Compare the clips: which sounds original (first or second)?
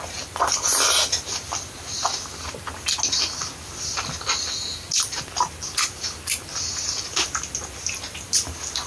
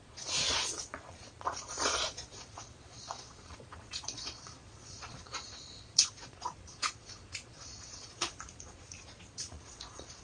first